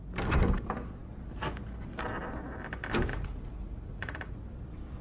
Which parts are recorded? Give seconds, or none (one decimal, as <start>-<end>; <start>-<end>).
0.0-3.1; 4.4-5.0